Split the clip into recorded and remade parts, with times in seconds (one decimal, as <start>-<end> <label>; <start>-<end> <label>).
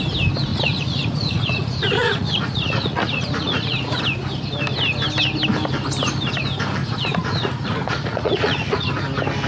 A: 0.0-0.5 recorded; 0.5-4.0 remade; 4.0-6.8 recorded; 6.8-8.9 remade; 8.9-9.5 recorded